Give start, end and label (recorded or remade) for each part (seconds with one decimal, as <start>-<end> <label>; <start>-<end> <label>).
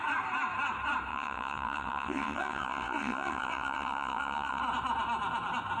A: 0.0-1.1 recorded; 1.1-4.6 remade; 4.6-5.8 recorded